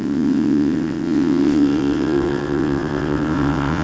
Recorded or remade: remade